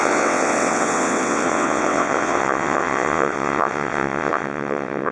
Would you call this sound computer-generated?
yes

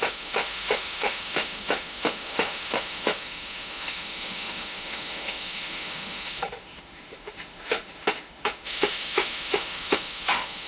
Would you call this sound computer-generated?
yes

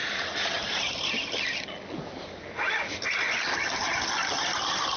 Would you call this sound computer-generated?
no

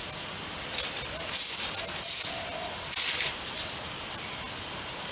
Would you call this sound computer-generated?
no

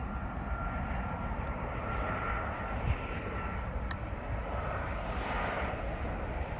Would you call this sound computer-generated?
no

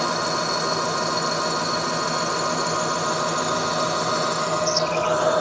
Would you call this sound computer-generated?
no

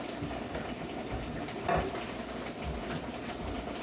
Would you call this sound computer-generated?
no